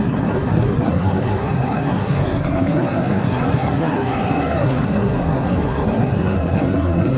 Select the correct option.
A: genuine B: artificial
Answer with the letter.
B